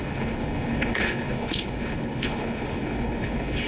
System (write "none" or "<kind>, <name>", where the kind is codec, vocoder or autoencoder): codec, HILCodec